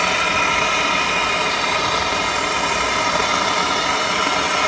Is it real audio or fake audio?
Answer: real